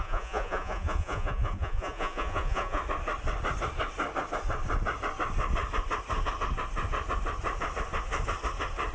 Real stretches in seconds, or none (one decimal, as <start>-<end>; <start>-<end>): 2.8-8.9